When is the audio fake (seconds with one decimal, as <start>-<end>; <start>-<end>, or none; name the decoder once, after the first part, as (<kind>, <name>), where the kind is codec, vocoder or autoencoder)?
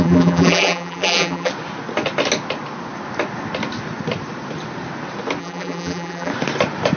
0.0-1.5 (vocoder, BigVGAN v2); 5.4-6.3